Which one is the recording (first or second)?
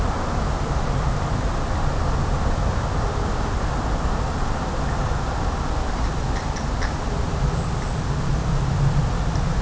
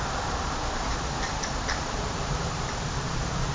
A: first